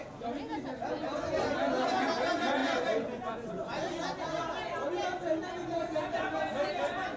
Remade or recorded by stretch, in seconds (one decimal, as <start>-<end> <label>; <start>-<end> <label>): 0.0-7.2 recorded